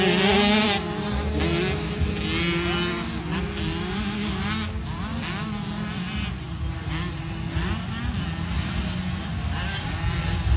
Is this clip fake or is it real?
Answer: real